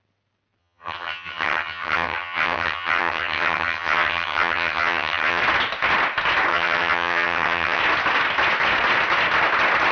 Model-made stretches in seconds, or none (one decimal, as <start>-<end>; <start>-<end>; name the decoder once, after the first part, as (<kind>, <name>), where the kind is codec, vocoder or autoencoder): 0.6-5.4 (vocoder, HiFi-GAN); 6.5-7.8